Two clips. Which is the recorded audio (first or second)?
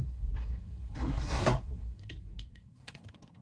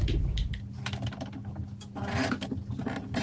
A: second